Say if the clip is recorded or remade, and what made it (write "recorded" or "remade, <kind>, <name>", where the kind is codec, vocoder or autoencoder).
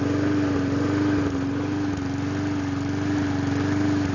recorded